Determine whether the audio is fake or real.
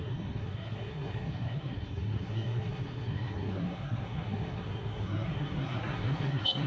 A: fake